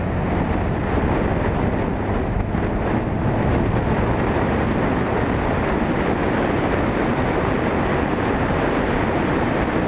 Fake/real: real